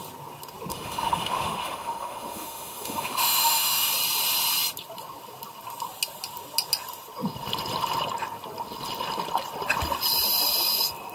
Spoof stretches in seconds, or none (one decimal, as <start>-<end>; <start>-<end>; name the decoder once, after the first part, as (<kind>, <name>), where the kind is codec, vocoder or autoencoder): 0.7-3.9 (autoencoder, DAC-VAE)